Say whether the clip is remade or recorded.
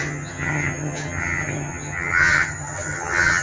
remade